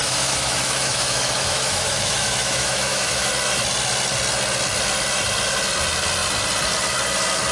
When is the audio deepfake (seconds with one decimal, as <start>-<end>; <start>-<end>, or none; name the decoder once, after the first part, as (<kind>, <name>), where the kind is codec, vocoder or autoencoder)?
0.0-3.3 (autoencoder, DAC-VAE)